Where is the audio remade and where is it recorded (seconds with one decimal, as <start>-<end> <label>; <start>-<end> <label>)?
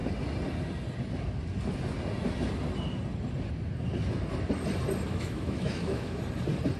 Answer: 0.0-5.1 recorded; 5.1-6.2 remade; 6.2-6.8 recorded